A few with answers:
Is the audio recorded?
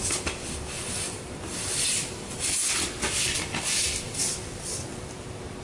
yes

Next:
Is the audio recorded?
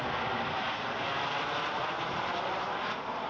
no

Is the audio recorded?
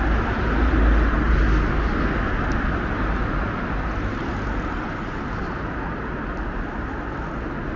yes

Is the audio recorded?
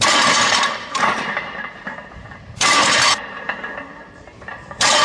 no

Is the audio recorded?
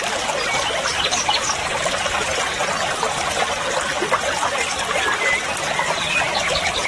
yes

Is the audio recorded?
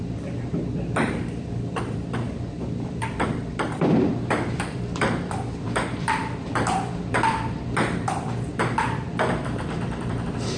no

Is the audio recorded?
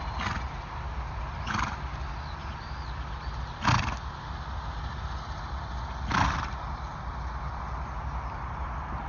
yes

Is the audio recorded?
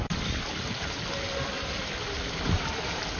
no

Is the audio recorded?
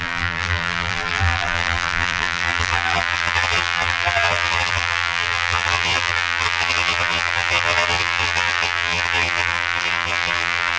no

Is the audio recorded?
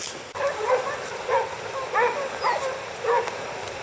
no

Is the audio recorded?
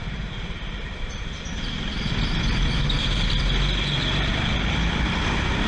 no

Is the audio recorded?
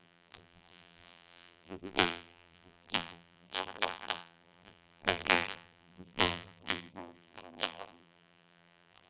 no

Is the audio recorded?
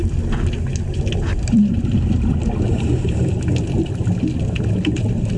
yes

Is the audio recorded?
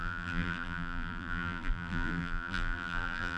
no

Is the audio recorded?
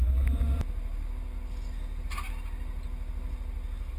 yes